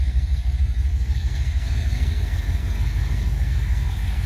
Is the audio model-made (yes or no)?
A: yes